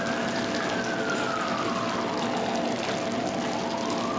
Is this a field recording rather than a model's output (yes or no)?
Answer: yes